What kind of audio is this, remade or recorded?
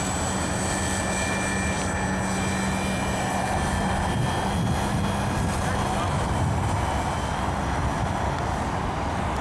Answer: recorded